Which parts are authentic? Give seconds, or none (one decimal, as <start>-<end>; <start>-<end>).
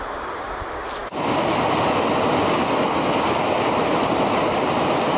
0.0-5.2